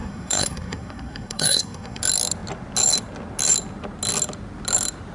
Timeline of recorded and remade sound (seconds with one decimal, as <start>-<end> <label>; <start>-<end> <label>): 0.0-2.0 remade; 2.0-5.1 recorded